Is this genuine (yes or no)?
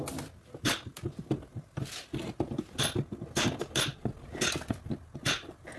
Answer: yes